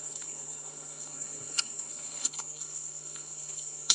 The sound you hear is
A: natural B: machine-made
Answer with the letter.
B